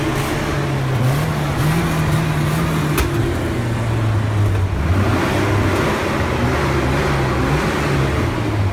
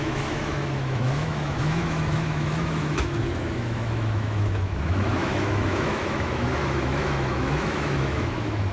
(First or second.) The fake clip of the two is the second